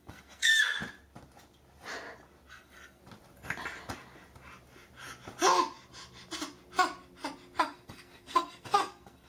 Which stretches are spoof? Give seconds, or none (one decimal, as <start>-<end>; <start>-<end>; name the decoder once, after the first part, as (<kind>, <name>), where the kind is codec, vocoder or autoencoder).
0.0-0.8 (codec, SNAC); 2.5-3.0; 7.6-9.3